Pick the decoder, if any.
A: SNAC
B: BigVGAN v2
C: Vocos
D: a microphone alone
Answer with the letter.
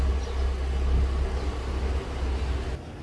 D